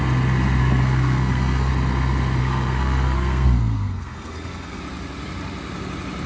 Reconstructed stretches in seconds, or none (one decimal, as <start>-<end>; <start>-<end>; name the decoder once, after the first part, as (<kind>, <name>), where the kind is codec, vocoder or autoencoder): 0.6-1.7 (codec, SNAC); 2.4-4.8